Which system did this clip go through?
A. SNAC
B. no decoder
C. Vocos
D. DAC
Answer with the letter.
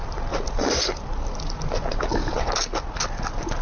B